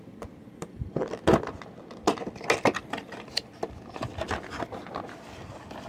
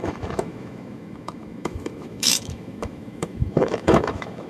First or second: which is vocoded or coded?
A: second